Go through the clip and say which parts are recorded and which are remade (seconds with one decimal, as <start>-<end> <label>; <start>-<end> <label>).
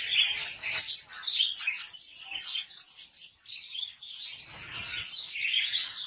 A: 0.0-1.1 recorded; 1.1-1.9 remade; 1.9-6.1 recorded